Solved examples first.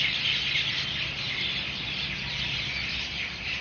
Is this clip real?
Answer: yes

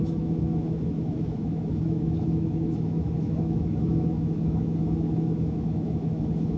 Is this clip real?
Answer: no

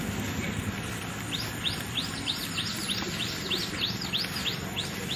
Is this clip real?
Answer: yes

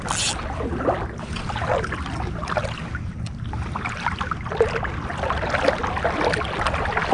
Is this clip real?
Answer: yes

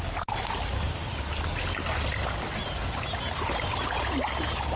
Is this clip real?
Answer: yes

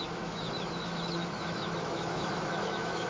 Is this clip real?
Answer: no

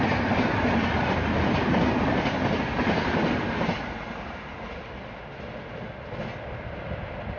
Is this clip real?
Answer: yes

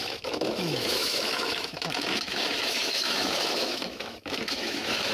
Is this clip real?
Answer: no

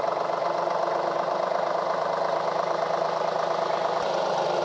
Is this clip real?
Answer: yes